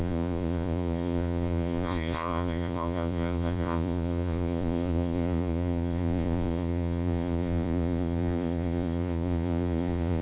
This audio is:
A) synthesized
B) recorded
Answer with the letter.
A